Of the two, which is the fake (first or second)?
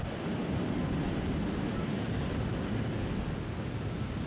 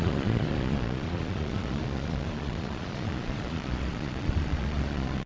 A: second